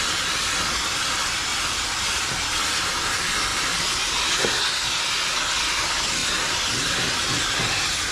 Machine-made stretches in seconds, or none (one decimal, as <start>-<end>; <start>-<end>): none